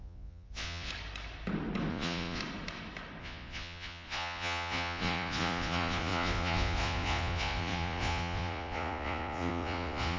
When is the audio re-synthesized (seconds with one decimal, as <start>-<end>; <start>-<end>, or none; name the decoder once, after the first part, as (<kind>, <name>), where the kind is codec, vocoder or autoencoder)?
0.0-0.9 (vocoder, Vocos); 1.9-2.4; 3.2-10.2